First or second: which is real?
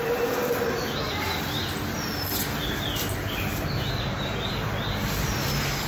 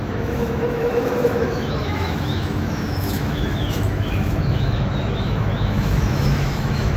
first